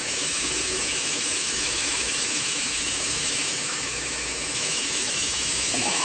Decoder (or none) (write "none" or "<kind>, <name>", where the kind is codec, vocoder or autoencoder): autoencoder, DAC-VAE